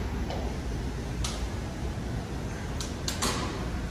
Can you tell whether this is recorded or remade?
recorded